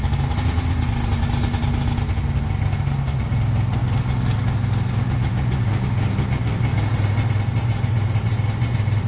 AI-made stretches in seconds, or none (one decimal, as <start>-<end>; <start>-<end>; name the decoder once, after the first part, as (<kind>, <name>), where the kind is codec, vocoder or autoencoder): none